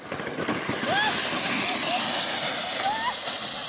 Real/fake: real